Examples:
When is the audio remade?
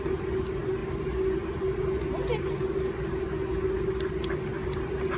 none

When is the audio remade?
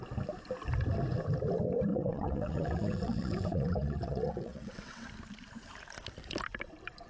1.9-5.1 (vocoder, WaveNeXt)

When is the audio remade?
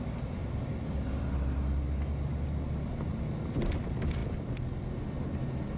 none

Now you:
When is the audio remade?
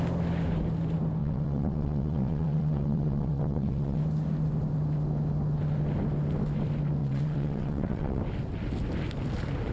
1.2-4.0 (vocoder, WaveNeXt); 7.0-8.2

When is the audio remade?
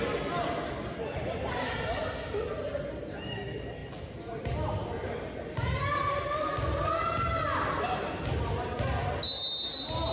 none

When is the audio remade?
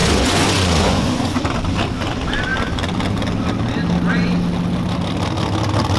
0.0-1.4 (vocoder, Vocos)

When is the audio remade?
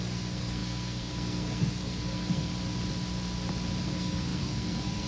0.0-2.5 (codec, SNAC); 3.8-5.1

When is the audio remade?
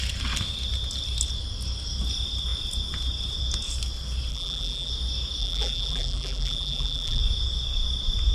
4.3-4.9 (vocoder, BigVGAN v2); 5.4-7.2